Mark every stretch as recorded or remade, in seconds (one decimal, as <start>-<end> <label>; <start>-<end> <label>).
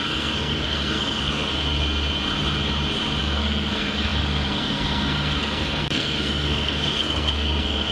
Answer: 0.0-1.5 remade; 1.5-3.2 recorded; 3.2-7.9 remade